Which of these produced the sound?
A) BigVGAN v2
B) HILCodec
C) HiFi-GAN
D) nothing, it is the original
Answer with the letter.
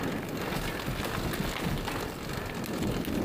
D